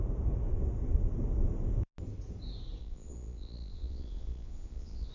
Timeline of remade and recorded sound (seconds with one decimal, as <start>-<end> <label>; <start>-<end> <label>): 0.0-2.8 recorded; 2.8-5.1 remade